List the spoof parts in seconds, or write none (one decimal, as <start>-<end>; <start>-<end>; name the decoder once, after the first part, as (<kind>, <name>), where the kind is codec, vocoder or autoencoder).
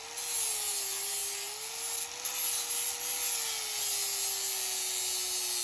none